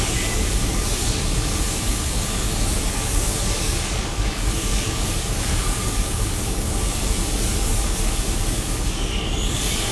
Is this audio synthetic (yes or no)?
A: yes